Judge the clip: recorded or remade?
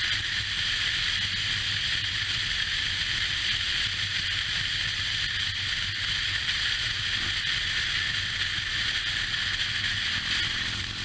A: recorded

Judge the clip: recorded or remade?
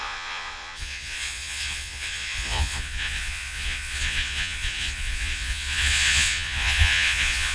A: remade